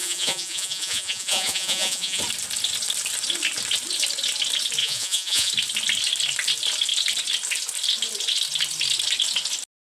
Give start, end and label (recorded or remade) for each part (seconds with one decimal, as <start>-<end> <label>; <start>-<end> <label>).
0.0-2.2 remade; 2.2-4.8 recorded; 4.8-5.5 remade; 5.5-9.9 recorded